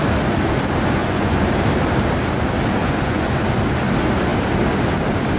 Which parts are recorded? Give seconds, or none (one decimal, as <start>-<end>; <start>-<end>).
0.0-1.0; 1.5-2.8; 3.3-5.4